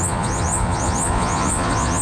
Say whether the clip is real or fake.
fake